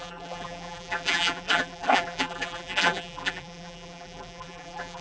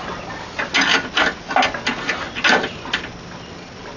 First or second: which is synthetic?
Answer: first